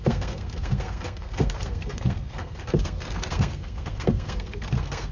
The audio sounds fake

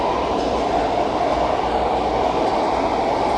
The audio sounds real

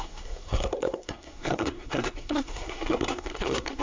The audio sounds fake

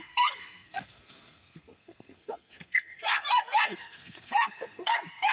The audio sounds fake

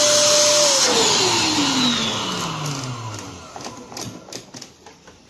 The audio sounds real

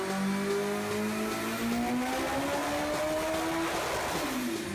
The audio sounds real